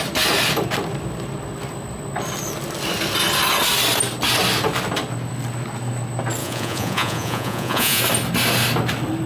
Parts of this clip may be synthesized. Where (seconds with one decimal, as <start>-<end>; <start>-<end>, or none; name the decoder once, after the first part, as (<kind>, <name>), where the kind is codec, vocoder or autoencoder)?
6.4-8.0 (vocoder, Vocos)